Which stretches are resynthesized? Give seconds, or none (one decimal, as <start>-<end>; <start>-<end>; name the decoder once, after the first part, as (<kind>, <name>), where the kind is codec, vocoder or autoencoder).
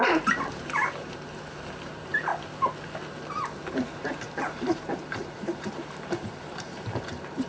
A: 0.0-2.3 (vocoder, BigVGAN v2); 3.7-7.5